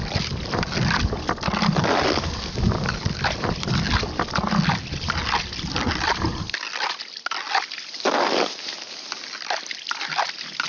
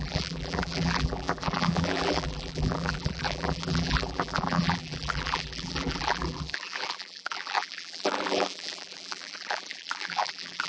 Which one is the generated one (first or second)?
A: second